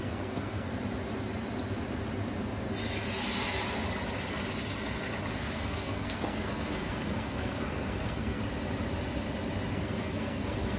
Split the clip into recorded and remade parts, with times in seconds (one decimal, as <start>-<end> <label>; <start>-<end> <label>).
0.0-0.7 remade; 0.7-5.3 recorded; 5.3-8.4 remade; 8.4-9.7 recorded; 9.7-10.8 remade